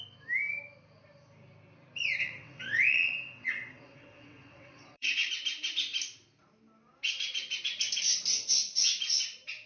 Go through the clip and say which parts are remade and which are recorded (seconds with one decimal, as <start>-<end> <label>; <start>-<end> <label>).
0.0-2.2 recorded; 2.2-5.3 remade; 5.3-9.7 recorded